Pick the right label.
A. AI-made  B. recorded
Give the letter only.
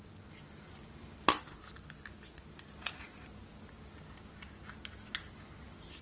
B